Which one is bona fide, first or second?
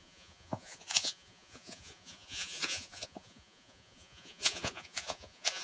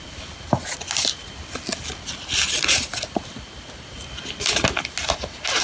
second